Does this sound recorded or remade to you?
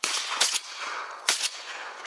remade